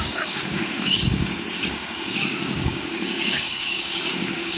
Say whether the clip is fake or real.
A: fake